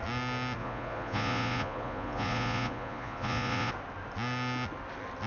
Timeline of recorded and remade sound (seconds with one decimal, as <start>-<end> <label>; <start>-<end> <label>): 0.0-0.6 recorded; 0.6-3.7 remade; 3.7-5.3 recorded